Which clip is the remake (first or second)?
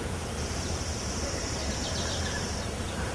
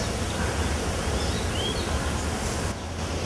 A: first